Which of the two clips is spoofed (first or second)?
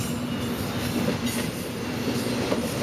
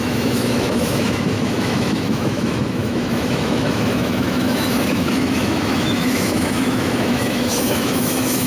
second